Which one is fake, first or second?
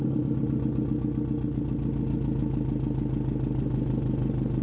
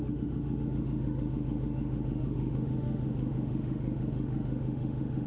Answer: second